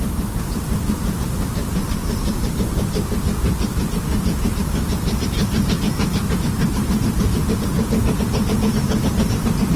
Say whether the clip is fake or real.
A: fake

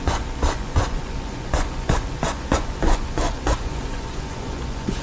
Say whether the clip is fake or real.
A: fake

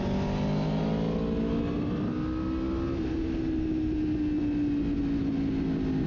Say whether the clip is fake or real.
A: real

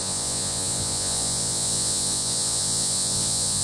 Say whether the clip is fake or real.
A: fake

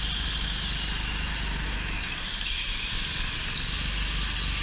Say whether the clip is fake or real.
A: real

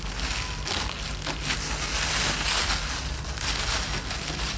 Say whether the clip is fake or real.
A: real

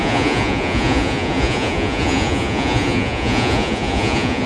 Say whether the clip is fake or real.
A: fake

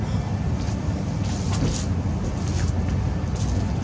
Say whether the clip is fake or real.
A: real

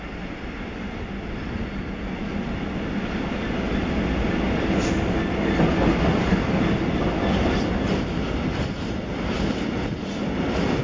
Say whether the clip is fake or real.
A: real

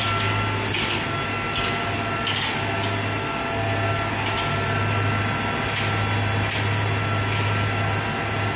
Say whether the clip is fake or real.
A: real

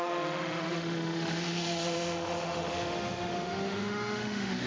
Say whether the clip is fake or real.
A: fake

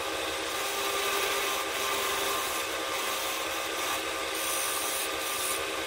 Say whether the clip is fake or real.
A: real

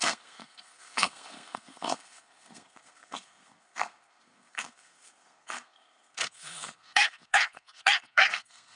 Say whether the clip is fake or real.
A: fake